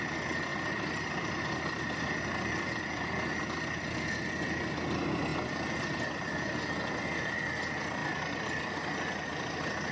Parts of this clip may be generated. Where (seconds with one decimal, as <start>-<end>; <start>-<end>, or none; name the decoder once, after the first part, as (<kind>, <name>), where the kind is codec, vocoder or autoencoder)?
0.5-3.1 (vocoder, BigVGAN v2); 8.0-9.4

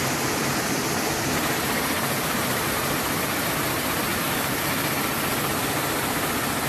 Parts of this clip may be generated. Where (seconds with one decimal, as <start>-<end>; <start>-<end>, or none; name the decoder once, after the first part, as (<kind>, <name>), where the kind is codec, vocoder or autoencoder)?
none

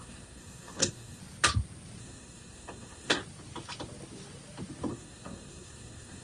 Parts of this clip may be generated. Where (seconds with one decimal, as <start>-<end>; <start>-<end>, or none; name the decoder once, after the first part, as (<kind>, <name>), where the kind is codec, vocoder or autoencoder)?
0.0-1.2 (codec, SNAC); 2.0-3.2; 4.9-6.2

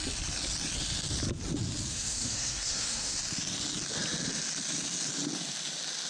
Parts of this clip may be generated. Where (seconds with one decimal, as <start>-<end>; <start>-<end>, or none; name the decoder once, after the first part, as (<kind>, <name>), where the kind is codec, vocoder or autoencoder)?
1.9-3.2 (codec, SNAC)

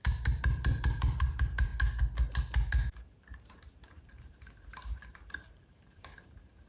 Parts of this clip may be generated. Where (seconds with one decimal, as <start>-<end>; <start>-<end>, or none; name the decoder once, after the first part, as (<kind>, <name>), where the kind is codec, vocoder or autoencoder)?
0.0-1.7 (vocoder, BigVGAN v2); 2.7-6.7

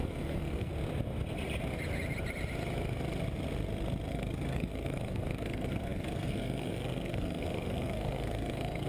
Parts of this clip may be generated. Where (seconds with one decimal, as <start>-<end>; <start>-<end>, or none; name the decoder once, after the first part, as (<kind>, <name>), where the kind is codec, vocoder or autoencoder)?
0.0-0.7 (codec, SNAC); 4.1-8.9

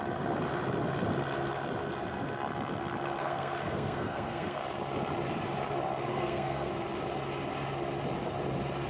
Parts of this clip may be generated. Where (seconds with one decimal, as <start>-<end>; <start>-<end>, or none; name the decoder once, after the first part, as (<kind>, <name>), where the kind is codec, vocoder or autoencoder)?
3.2-4.6 (codec, SNAC); 6.1-6.7